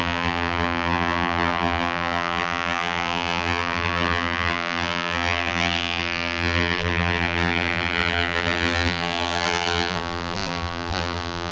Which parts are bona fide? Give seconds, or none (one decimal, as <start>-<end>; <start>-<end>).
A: none